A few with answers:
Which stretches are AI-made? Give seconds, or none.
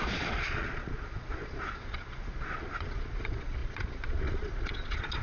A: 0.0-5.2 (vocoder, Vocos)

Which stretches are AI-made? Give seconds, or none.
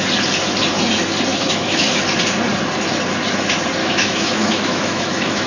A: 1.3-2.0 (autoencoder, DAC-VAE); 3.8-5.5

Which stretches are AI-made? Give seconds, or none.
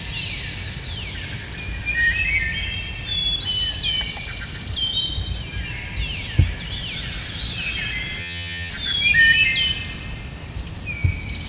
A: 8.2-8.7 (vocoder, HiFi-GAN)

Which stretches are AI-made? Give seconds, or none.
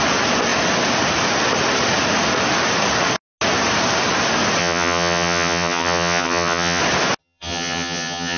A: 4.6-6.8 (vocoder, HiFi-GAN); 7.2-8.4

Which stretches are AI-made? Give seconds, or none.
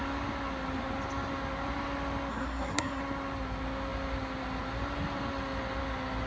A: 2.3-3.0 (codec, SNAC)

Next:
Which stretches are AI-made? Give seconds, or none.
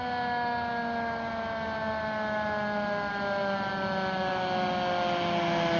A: none